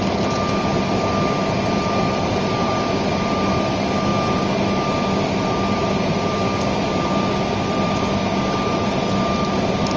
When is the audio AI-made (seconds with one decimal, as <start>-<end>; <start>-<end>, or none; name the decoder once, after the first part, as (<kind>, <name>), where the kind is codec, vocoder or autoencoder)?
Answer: none